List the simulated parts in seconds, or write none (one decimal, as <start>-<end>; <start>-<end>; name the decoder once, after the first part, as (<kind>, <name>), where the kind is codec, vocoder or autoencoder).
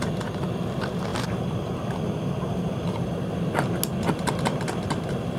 none